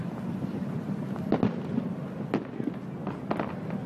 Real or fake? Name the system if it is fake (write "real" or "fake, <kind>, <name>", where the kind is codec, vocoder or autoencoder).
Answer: real